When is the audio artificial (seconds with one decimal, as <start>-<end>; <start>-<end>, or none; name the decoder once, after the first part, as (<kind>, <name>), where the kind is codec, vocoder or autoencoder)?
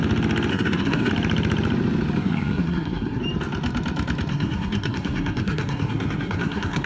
0.5-1.1 (codec, SNAC); 2.2-3.2; 4.3-6.9